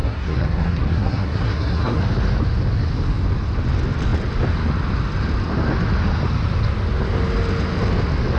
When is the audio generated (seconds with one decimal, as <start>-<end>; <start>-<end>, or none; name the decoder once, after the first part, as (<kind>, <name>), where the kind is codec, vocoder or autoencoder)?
0.0-2.0 (codec, SNAC)